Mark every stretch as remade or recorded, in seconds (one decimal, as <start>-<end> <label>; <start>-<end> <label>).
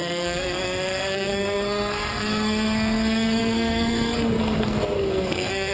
0.0-5.7 remade